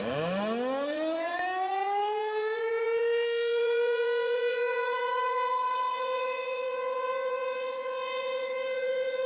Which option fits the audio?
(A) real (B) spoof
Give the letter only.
B